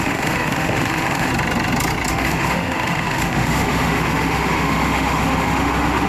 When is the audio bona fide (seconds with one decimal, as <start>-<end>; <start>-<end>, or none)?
1.3-2.1